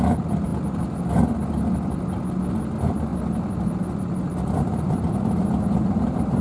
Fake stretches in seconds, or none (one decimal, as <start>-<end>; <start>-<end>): 3.1-6.4